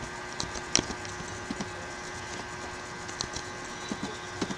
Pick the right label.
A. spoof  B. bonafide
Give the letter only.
B